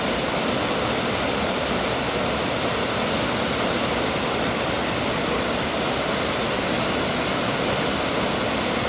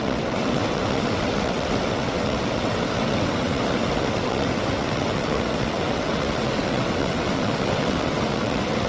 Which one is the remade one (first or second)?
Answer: second